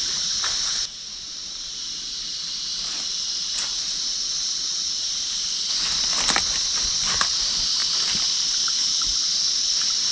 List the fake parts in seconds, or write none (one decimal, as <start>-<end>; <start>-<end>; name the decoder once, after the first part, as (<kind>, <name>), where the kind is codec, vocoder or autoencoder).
none